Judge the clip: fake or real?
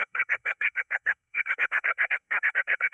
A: fake